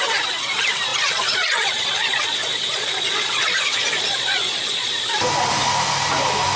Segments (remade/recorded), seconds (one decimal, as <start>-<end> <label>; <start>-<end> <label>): 0.0-0.9 recorded; 0.9-4.9 remade; 4.9-6.6 recorded